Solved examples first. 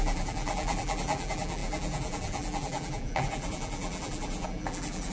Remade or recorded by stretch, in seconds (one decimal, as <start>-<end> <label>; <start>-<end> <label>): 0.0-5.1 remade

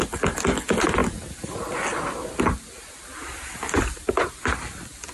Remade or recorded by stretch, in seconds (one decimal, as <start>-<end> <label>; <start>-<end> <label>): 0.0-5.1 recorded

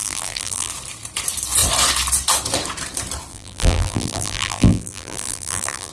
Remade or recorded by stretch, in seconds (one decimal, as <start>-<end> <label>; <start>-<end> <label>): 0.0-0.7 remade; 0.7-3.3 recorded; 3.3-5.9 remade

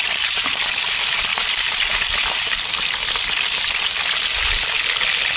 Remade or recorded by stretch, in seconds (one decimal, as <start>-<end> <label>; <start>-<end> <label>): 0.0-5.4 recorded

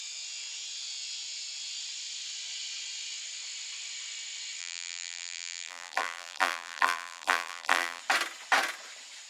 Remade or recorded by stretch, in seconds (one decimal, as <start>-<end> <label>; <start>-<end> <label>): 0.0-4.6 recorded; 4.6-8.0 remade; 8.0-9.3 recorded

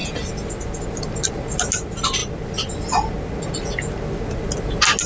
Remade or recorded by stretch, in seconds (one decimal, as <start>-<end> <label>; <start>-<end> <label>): 0.0-5.1 recorded

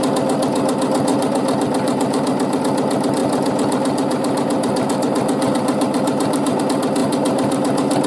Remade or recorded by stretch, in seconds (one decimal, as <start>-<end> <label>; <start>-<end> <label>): 0.0-1.1 recorded; 1.1-2.6 remade; 2.6-3.2 recorded; 3.2-6.6 remade; 6.6-7.0 recorded; 7.0-8.1 remade

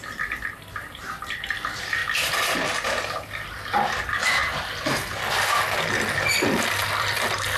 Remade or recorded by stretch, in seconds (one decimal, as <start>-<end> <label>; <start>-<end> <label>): 0.0-2.0 remade; 2.0-3.2 recorded; 3.2-4.4 remade; 4.4-6.2 recorded; 6.2-7.6 remade